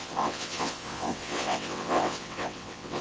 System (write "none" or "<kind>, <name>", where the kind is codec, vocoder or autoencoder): vocoder, WaveNeXt